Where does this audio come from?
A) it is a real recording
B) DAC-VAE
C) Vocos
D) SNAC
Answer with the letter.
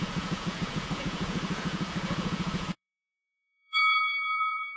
C